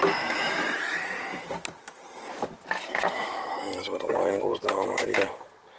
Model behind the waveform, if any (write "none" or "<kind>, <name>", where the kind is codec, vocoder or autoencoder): vocoder, BigVGAN v2